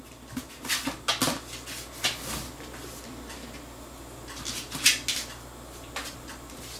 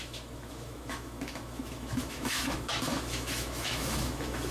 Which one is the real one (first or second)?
first